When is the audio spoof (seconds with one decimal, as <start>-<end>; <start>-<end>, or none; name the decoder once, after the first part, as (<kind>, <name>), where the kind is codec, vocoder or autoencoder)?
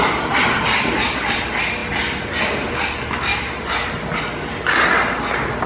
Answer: 3.3-4.2 (vocoder, BigVGAN v2)